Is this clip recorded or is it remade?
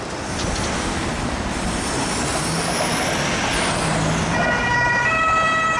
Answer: recorded